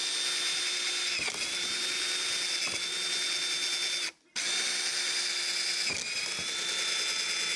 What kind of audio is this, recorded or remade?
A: recorded